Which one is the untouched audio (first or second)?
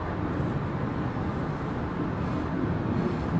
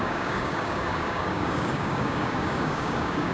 first